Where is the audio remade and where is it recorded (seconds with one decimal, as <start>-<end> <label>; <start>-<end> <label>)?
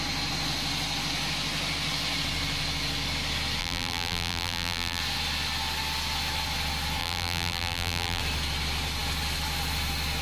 0.0-3.6 recorded; 3.6-5.0 remade; 5.0-7.0 recorded; 7.0-8.2 remade; 8.2-10.2 recorded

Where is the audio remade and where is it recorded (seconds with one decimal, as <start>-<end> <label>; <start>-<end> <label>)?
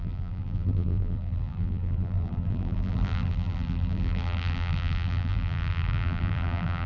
0.0-6.9 remade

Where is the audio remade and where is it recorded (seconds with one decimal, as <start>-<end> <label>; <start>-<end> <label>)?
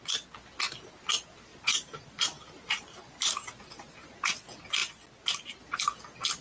0.0-1.5 recorded; 1.5-4.1 remade; 4.1-6.4 recorded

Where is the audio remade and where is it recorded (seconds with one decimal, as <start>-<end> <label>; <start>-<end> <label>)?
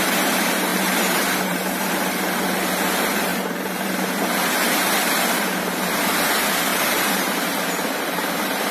0.0-0.7 recorded; 0.7-2.1 remade; 2.1-3.3 recorded; 3.3-3.9 remade; 3.9-6.7 recorded; 6.7-8.0 remade; 8.0-8.7 recorded